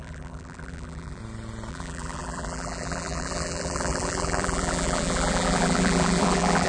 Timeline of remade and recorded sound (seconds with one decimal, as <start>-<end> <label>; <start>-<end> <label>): 0.0-1.2 remade; 1.2-1.7 recorded; 1.7-6.7 remade